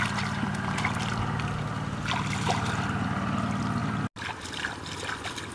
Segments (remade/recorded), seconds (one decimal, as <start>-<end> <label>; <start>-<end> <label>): 0.0-5.5 recorded